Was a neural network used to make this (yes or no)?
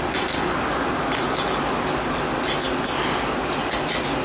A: no